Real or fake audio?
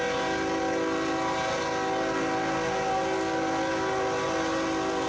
real